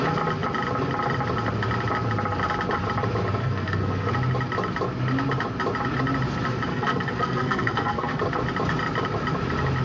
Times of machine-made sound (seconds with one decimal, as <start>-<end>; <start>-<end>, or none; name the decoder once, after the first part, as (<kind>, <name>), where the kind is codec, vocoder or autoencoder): 3.4-4.1 (codec, SNAC); 6.7-8.2